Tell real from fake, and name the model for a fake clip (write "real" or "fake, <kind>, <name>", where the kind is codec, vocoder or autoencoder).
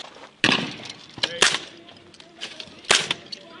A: real